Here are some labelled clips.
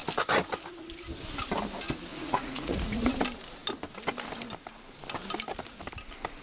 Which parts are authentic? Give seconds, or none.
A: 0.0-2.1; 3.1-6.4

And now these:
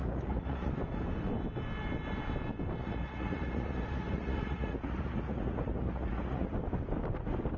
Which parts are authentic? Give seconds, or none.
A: 0.7-2.8; 6.5-7.6

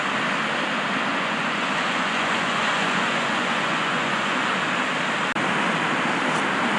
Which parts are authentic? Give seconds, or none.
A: 0.0-1.1; 4.5-6.8

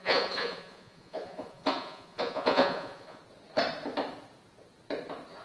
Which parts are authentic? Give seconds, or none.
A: 3.2-5.4

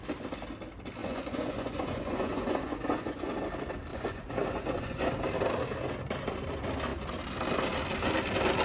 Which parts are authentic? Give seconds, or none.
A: 0.0-1.0; 3.3-3.9; 5.1-8.6

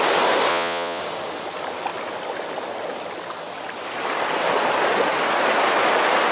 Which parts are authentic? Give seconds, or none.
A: 0.0-0.5; 1.0-6.3